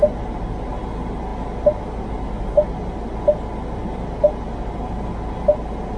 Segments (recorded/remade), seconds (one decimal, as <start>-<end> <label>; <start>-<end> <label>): 0.0-6.0 recorded